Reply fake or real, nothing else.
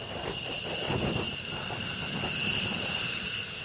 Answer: real